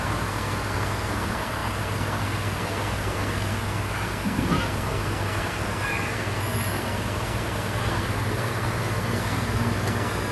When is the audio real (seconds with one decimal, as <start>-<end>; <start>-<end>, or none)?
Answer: none